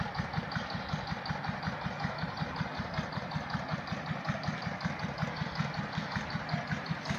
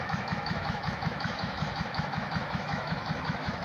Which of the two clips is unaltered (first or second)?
first